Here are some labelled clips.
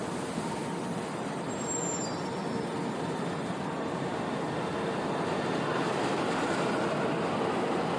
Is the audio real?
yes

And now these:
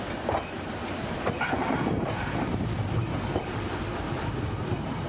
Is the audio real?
yes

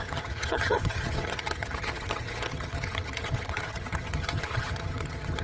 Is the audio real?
no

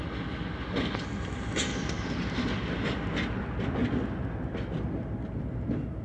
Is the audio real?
yes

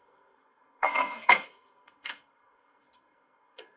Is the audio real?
no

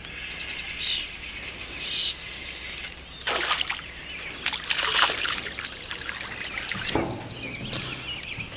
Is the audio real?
yes